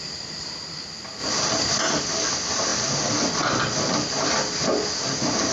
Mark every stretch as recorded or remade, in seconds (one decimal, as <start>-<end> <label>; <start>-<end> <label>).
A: 0.0-5.5 recorded